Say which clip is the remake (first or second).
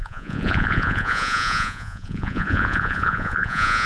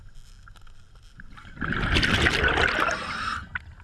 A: first